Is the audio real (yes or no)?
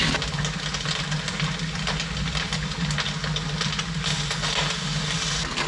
yes